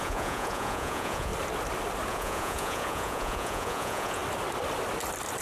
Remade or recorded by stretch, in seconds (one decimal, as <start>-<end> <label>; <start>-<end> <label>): 0.0-1.3 remade; 1.3-2.1 recorded; 2.1-4.2 remade; 4.2-5.4 recorded